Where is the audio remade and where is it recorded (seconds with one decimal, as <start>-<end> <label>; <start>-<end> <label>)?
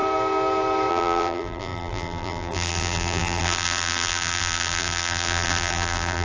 0.0-0.9 recorded; 0.9-6.2 remade